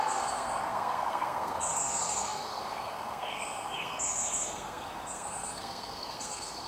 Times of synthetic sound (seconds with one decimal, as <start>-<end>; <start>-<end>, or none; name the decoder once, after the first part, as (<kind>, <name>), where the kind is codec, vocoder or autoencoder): 0.0-6.7 (codec, SNAC)